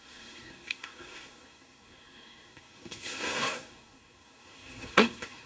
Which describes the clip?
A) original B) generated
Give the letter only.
B